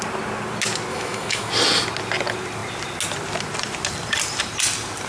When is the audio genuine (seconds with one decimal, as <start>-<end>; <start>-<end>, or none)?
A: 0.0-0.9; 1.5-5.1